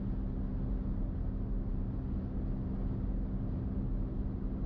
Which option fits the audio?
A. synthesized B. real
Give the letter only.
B